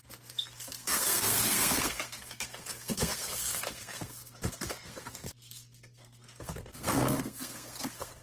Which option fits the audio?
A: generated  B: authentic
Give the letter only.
A